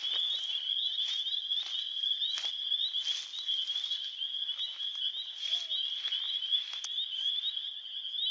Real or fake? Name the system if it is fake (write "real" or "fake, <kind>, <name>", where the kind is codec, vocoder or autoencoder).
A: real